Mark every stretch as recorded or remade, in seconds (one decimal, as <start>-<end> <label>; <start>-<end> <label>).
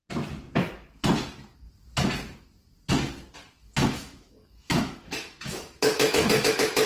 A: 0.0-3.6 recorded; 3.6-6.9 remade